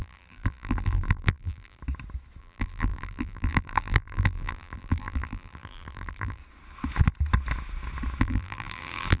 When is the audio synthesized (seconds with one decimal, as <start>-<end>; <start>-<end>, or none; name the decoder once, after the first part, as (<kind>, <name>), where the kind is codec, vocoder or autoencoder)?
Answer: 0.0-1.8 (vocoder, BigVGAN v2); 2.4-6.4; 8.2-9.2

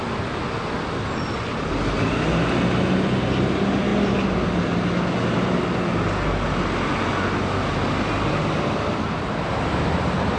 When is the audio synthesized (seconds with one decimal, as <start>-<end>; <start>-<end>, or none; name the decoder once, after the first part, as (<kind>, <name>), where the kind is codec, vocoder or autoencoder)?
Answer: none

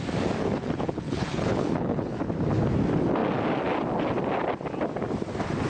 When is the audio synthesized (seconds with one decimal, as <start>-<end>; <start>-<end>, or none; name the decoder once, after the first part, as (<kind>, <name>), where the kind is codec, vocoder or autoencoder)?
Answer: 0.4-2.2 (codec, HILCodec)